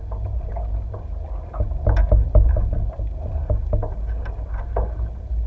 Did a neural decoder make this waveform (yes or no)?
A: no